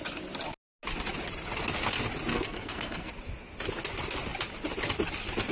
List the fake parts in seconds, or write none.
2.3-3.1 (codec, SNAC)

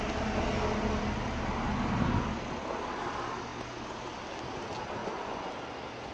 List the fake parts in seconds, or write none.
5.0-5.5 (vocoder, Vocos)

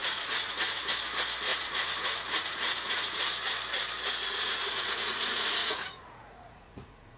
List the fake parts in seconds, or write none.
0.0-0.8 (vocoder, Vocos); 1.5-3.2; 4.2-7.2

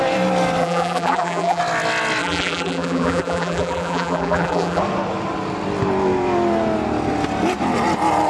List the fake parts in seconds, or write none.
0.6-1.6 (vocoder, BigVGAN v2); 2.2-4.8

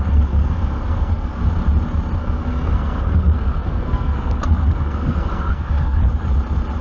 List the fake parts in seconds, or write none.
0.0-1.4 (codec, SNAC); 2.2-6.0

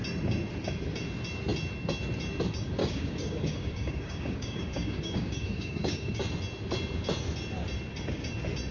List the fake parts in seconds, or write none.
2.8-6.2 (codec, DAC)